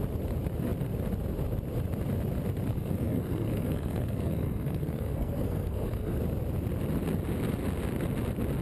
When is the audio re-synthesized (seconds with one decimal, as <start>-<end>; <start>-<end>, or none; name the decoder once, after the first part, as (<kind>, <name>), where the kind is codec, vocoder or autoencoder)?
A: 2.7-6.2 (codec, SNAC)